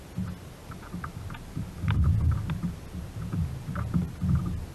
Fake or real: real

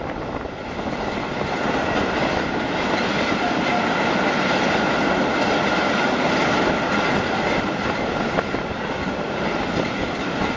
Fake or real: real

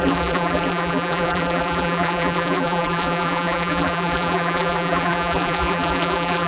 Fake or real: fake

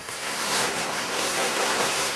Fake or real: fake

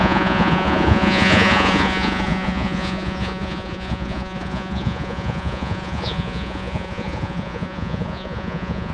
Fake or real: fake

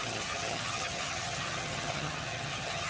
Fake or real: fake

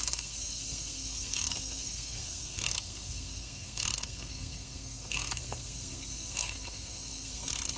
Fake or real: fake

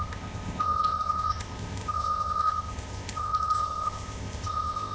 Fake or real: fake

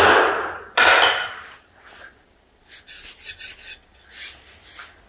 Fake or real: real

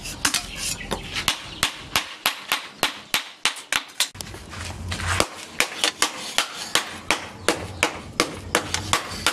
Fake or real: real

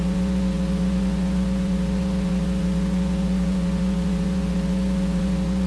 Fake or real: fake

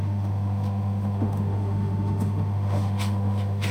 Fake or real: fake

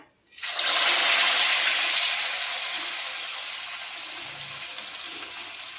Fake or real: real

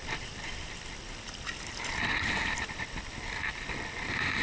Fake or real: real